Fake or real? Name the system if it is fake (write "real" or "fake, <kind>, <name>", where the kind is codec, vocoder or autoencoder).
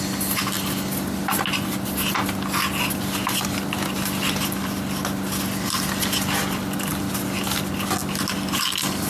real